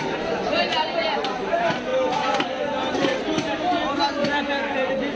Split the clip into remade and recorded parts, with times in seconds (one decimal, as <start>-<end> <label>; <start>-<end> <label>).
0.0-1.9 remade; 1.9-2.8 recorded; 2.8-4.2 remade; 4.2-5.2 recorded